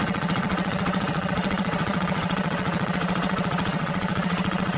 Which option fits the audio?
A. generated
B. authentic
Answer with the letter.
A